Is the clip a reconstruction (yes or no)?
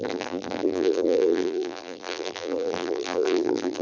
yes